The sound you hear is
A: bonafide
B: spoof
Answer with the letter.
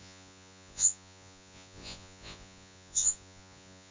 B